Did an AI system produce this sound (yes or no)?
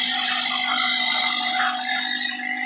no